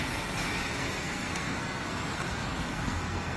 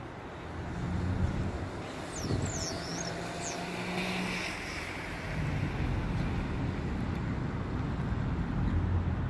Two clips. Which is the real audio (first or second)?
second